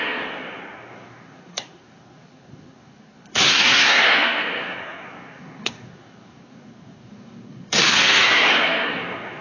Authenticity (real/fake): fake